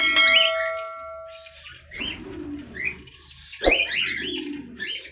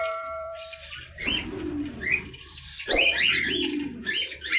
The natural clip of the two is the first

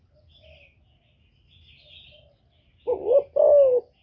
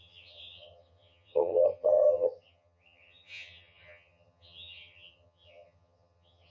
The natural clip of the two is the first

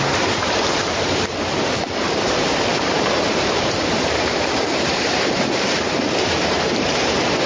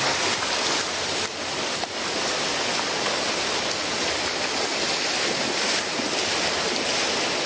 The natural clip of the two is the second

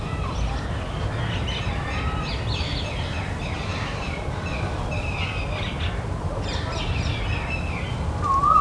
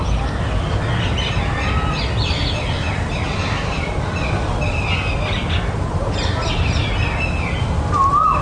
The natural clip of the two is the second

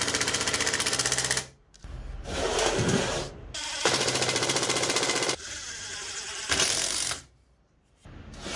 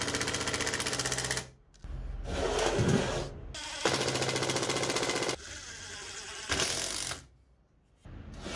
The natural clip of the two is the second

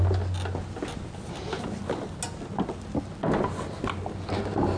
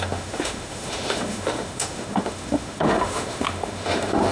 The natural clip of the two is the first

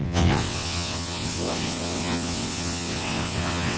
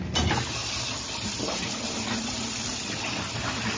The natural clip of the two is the second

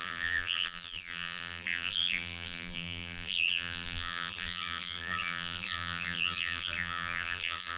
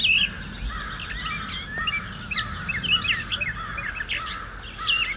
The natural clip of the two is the second